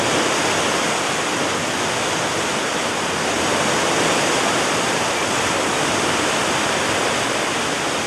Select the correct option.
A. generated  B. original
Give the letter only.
B